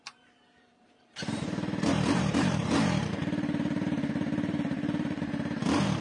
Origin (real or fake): fake